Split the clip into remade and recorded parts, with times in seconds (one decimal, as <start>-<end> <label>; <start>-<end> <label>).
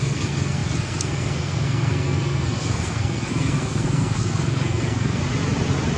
0.0-5.2 remade; 5.2-6.0 recorded